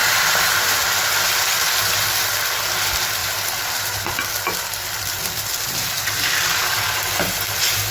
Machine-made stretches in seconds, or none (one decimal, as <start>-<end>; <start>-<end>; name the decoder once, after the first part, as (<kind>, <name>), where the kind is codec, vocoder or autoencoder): 3.2-7.9 (vocoder, BigVGAN v2)